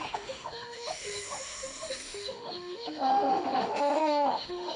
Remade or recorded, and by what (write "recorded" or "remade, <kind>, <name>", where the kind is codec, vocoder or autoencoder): remade, autoencoder, DAC-VAE